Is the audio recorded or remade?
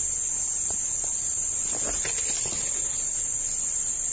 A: recorded